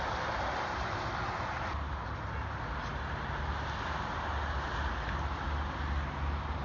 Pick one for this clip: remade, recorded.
recorded